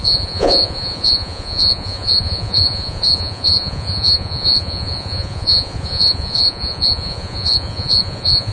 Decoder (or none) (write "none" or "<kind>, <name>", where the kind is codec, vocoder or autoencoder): vocoder, Vocos